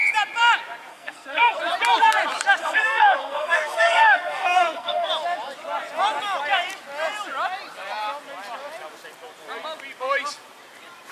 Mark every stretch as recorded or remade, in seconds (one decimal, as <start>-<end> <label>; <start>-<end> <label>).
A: 0.0-0.9 recorded; 0.9-1.6 remade; 1.6-2.6 recorded; 2.6-5.1 remade; 5.1-11.1 recorded